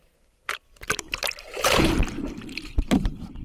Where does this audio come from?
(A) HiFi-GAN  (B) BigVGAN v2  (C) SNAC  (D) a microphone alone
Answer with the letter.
B